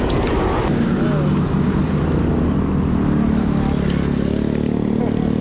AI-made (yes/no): no